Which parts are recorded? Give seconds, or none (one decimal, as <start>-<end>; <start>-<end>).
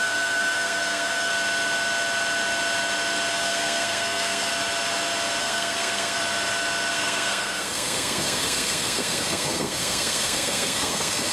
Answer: 1.3-3.3; 4.5-5.4; 6.2-6.9